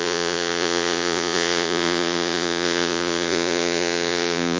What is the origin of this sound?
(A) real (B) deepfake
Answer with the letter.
B